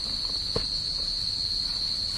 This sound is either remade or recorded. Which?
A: recorded